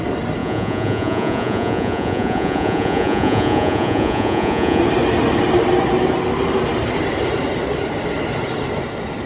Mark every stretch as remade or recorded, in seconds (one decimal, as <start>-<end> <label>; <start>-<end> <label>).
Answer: 0.0-0.4 recorded; 0.4-4.8 remade; 4.8-9.3 recorded